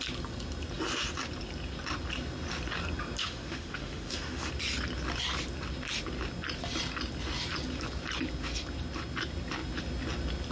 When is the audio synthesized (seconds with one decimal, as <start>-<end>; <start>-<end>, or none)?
3.2-4.5

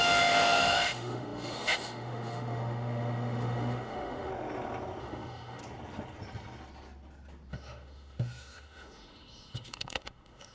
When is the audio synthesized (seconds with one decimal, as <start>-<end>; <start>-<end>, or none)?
0.0-4.3; 5.0-5.6; 7.5-10.5

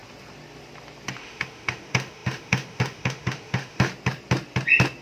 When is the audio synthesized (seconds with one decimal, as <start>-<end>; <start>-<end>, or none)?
1.2-3.9

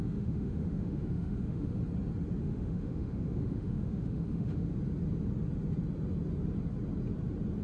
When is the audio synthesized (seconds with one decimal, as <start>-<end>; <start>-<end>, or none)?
0.0-1.8; 2.4-4.7